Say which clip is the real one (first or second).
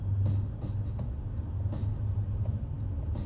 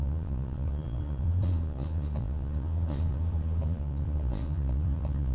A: first